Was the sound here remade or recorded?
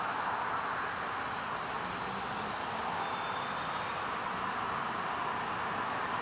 recorded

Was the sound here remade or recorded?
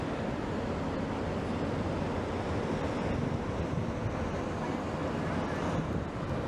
recorded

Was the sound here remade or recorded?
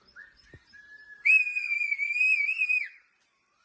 recorded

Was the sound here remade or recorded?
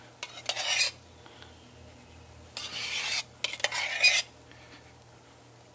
recorded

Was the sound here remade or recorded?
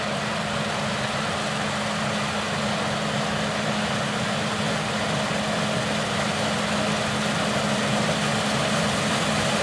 recorded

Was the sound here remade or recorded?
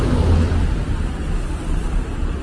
recorded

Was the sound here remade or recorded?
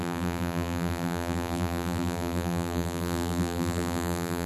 remade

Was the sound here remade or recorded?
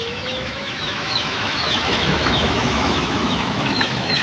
remade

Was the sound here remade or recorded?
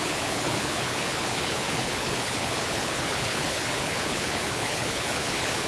remade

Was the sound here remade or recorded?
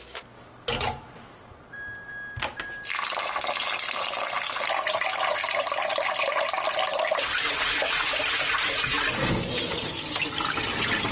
recorded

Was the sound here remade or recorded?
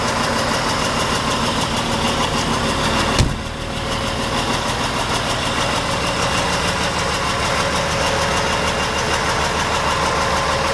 recorded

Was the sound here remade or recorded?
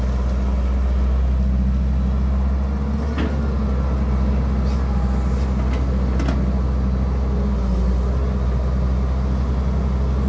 recorded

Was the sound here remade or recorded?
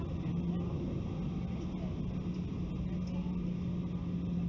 recorded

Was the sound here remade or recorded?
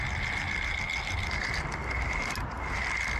recorded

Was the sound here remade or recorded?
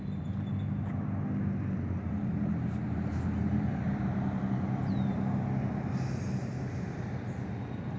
recorded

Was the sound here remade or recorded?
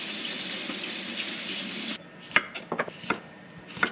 recorded